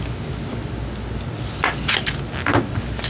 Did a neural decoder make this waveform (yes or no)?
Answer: no